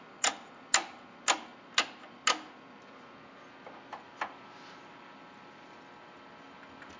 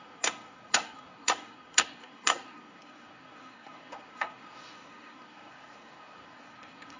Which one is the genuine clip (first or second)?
first